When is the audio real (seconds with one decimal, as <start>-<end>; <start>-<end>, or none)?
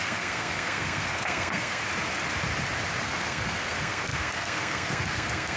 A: 1.8-3.0